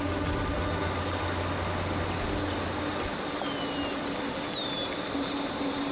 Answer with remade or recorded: recorded